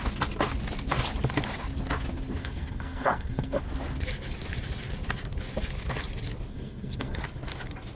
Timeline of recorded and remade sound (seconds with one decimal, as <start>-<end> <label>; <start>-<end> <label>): 0.0-2.4 recorded; 2.4-3.6 remade; 3.6-6.5 recorded; 6.5-7.2 remade; 7.2-8.0 recorded